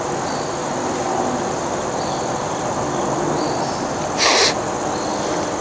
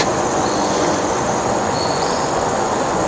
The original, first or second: first